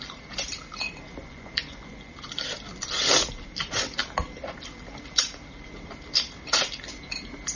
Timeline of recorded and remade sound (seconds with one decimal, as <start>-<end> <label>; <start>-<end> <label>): 0.0-1.2 recorded; 1.2-2.1 remade; 2.1-7.6 recorded